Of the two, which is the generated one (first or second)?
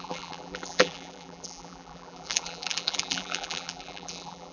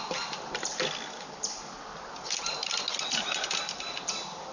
first